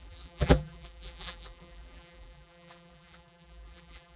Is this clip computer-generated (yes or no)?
yes